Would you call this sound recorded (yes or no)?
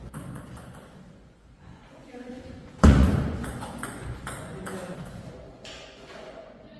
no